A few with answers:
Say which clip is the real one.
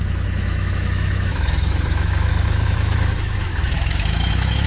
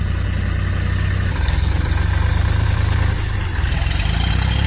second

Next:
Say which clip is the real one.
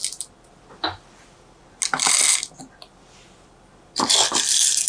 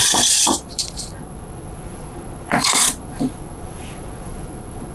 first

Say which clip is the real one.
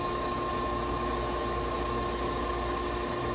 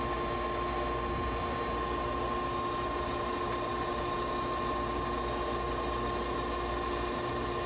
second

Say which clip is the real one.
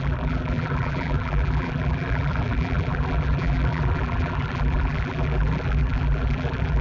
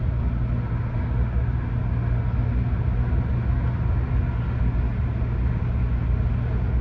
second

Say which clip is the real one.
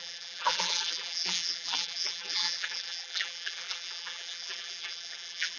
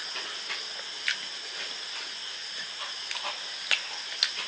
second